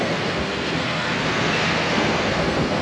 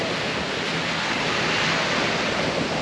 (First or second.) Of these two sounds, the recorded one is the second